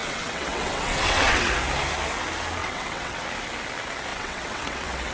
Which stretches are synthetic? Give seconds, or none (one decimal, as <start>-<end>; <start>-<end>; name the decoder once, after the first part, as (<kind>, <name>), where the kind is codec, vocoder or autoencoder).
0.0-1.5 (vocoder, WaveNeXt); 2.6-3.2; 4.1-5.1